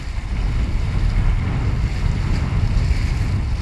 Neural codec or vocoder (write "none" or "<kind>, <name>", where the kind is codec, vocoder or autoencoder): none